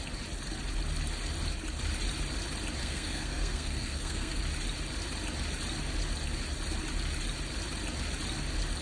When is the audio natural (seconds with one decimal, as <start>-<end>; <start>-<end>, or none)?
0.0-2.8; 4.4-8.8